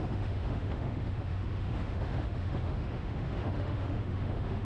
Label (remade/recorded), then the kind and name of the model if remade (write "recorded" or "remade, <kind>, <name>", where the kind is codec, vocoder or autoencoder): remade, autoencoder, DAC-VAE